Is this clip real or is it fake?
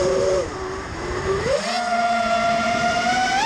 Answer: fake